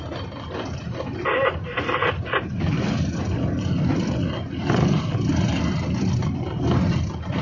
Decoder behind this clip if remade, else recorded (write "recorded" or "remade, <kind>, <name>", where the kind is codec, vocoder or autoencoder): recorded